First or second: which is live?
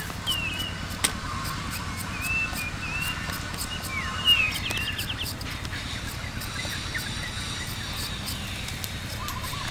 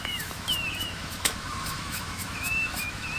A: first